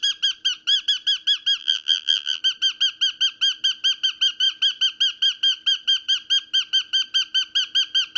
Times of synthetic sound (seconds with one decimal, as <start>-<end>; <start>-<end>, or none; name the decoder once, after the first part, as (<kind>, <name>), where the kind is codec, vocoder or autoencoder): 1.6-2.4 (vocoder, BigVGAN v2)

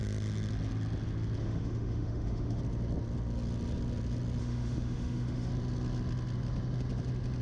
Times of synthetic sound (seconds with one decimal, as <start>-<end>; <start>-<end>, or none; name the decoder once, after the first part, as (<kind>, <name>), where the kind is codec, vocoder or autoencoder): 1.4-2.6 (autoencoder, DAC-VAE); 4.4-5.5